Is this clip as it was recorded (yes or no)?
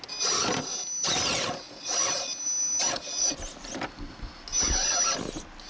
yes